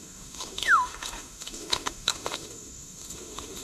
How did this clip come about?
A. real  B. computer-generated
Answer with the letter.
B